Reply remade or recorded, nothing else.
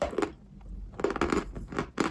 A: recorded